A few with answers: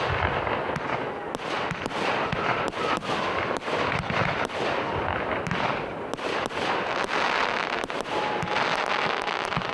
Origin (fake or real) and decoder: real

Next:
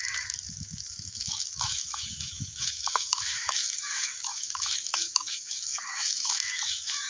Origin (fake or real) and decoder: fake, autoencoder, DAC-VAE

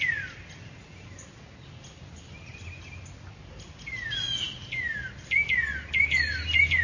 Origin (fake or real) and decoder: real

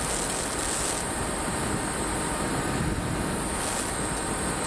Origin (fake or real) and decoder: real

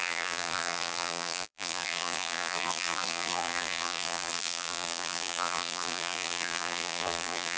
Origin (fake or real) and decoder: fake, vocoder, BigVGAN v2